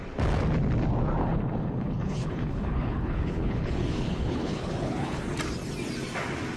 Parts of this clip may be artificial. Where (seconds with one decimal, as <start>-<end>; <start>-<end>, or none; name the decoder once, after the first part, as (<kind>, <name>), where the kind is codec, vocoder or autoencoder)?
1.2-5.2 (codec, HILCodec)